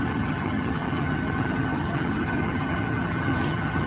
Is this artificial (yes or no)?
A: yes